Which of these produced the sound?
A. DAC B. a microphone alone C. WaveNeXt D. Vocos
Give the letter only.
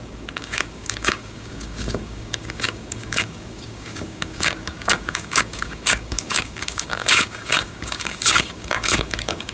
A